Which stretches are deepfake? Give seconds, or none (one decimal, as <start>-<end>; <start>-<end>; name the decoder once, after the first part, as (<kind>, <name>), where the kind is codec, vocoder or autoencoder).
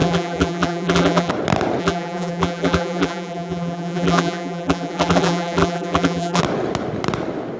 0.0-1.3 (vocoder, BigVGAN v2); 1.8-6.4